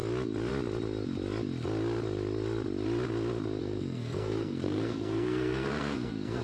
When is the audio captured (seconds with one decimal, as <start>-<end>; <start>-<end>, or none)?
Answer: 0.0-3.6